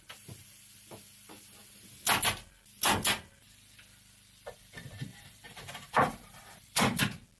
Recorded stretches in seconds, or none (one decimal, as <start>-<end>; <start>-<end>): 0.0-5.1; 7.0-7.4

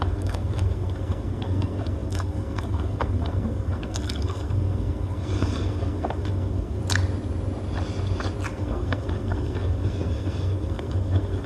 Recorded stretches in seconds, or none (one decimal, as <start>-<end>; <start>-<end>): 6.8-8.5

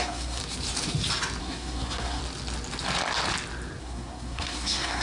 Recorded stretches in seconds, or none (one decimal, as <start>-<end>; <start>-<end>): 0.4-1.4; 2.2-3.8